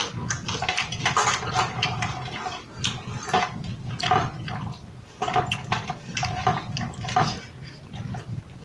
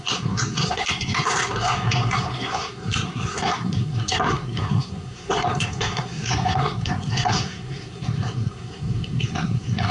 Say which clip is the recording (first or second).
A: first